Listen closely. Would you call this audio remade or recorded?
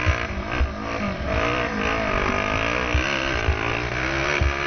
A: recorded